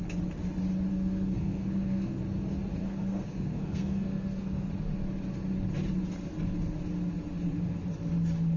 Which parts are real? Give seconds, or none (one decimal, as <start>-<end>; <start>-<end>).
0.0-0.9; 2.2-2.8; 4.7-8.6